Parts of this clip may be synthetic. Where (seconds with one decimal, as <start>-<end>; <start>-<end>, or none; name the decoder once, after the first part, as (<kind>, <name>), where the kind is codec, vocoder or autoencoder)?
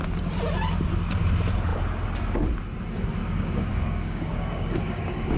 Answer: 3.2-5.4 (codec, DAC)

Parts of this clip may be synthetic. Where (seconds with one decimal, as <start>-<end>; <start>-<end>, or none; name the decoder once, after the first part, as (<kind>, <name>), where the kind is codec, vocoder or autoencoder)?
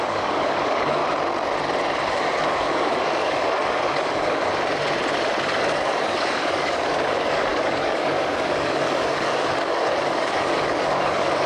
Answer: 0.0-1.0 (codec, DAC); 2.0-4.5; 5.4-11.5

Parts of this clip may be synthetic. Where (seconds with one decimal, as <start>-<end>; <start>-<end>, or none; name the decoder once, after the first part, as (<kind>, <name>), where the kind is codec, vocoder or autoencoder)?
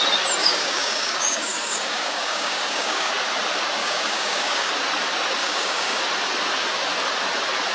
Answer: 0.4-3.1 (codec, DAC); 3.8-4.7; 5.4-6.0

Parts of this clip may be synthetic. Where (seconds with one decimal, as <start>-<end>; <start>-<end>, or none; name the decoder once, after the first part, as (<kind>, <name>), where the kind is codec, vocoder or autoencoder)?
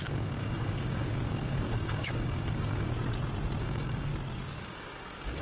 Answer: 0.0-2.9 (codec, DAC); 3.6-4.1; 4.6-5.4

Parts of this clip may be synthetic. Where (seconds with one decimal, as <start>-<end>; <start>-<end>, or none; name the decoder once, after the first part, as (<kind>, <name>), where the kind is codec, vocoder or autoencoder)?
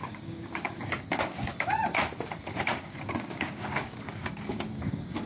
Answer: 0.0-1.5 (codec, DAC); 2.6-5.3